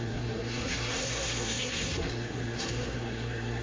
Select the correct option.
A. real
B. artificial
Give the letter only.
B